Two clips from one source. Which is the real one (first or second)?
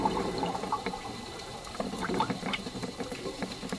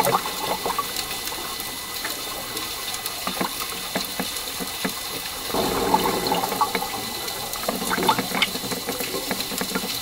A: second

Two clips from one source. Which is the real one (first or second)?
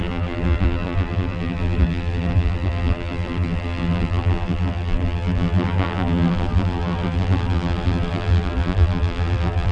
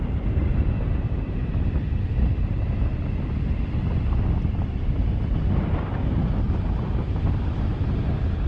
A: second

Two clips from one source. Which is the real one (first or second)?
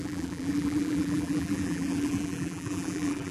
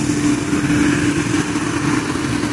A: second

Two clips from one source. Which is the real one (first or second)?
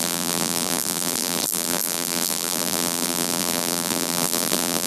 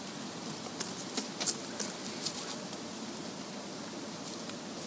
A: second